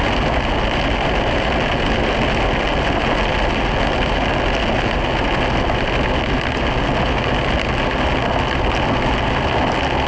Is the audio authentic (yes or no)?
yes